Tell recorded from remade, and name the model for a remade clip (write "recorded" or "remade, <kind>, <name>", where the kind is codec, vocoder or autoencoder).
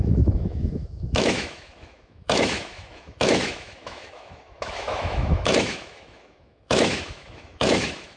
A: remade, autoencoder, DAC-VAE